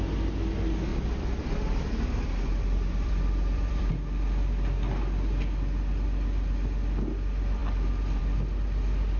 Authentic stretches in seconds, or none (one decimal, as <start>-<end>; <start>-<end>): 0.0-0.9; 3.9-9.2